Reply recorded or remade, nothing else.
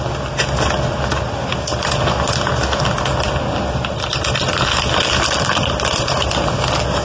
recorded